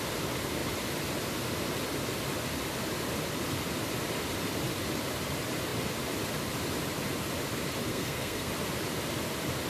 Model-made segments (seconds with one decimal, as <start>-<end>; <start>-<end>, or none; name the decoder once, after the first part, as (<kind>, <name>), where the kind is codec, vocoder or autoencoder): 7.9-8.5 (codec, SNAC)